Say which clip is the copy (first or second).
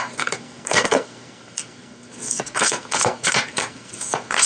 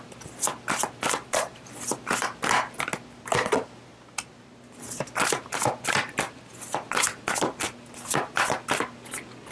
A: first